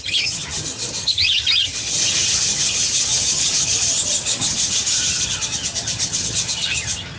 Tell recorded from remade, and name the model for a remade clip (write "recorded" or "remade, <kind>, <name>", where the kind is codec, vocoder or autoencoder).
remade, vocoder, HiFi-GAN